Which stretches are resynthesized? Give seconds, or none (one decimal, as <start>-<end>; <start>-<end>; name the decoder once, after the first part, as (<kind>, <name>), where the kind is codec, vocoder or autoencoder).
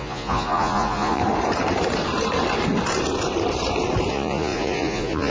0.0-1.2 (vocoder, Vocos); 4.1-5.3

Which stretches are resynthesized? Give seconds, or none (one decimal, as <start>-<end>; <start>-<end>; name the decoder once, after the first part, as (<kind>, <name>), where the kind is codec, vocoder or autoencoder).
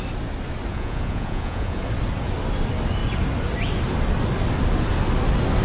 0.7-1.8 (vocoder, Vocos)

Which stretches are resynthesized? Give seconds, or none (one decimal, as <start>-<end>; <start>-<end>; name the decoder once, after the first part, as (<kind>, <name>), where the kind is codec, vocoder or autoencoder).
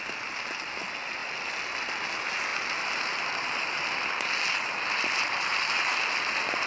none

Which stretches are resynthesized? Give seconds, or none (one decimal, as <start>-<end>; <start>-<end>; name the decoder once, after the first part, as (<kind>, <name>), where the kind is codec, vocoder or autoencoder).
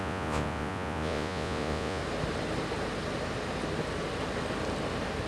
0.0-2.0 (vocoder, Vocos)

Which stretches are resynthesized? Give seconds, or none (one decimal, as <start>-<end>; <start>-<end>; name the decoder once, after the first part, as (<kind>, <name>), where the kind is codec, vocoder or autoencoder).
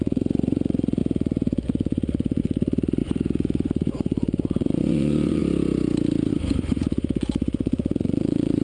0.0-5.4 (vocoder, Vocos); 6.3-8.6